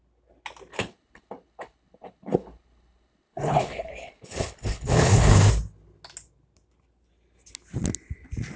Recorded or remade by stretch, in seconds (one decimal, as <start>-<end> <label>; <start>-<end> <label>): 0.0-0.7 recorded; 0.7-5.5 remade; 5.5-8.6 recorded